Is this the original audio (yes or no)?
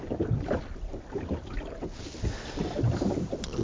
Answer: yes